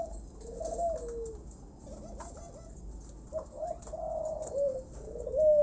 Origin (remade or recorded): recorded